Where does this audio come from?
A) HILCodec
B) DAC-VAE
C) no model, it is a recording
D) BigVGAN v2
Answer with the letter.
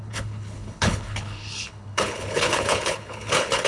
A